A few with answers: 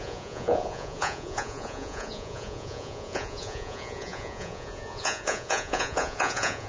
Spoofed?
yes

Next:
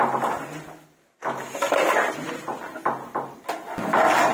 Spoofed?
no